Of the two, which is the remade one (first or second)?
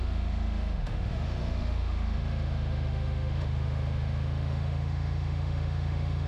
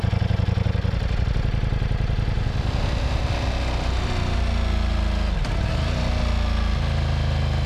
first